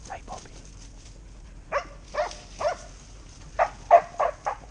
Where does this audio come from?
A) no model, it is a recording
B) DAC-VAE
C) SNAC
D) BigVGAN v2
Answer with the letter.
A